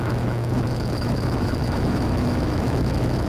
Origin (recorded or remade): remade